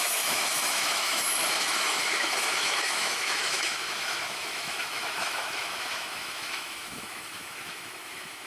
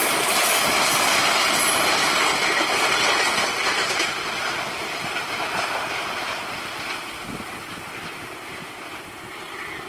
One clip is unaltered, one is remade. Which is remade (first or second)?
first